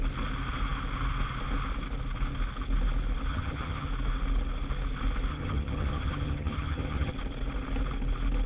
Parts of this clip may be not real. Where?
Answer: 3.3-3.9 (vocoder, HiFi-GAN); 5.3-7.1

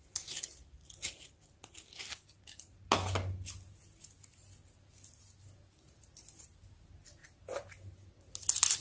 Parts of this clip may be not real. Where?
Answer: none

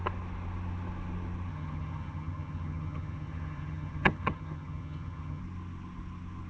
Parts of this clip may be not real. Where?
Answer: 1.5-5.4 (vocoder, HiFi-GAN)